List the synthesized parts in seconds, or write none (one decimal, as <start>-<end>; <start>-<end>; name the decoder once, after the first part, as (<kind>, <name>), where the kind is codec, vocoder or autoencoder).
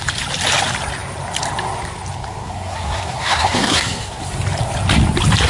2.4-4.2 (codec, SNAC)